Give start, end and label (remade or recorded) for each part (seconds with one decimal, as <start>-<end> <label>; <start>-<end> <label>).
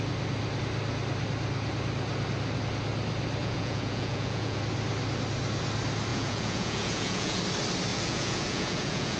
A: 0.0-3.4 recorded; 3.4-4.6 remade; 4.6-6.1 recorded; 6.1-7.4 remade; 7.4-7.9 recorded; 7.9-9.2 remade